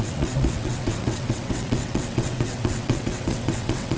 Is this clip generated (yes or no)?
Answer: yes